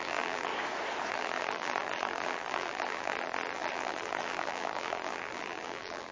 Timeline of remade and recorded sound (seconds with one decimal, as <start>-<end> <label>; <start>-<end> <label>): 0.0-0.5 remade; 0.5-1.1 recorded; 1.1-6.1 remade